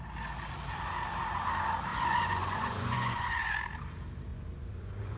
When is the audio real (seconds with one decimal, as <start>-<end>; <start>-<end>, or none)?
0.0-1.9; 3.6-4.3